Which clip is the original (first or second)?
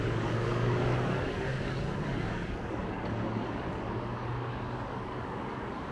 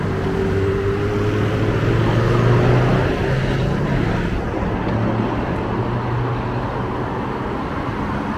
second